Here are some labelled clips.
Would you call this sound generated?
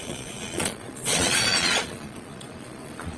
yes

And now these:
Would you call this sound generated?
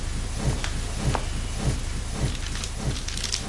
no